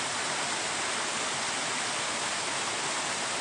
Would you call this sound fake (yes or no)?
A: no